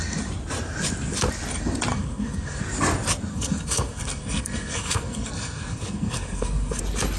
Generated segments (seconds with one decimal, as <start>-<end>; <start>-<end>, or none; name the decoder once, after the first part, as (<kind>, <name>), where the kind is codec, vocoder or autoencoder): 1.9-2.6 (codec, SNAC); 3.3-6.8